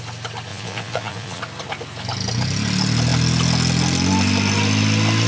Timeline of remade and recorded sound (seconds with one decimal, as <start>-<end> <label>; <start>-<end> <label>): 0.0-0.5 recorded; 0.5-1.4 remade; 1.4-5.3 recorded